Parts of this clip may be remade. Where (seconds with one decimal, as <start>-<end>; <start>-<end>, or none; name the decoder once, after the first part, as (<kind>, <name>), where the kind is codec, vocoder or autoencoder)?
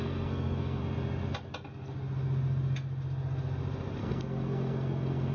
0.0-0.8 (codec, SNAC); 4.0-5.3